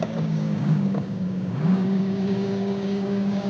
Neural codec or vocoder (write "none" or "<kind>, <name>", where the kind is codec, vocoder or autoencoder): codec, DAC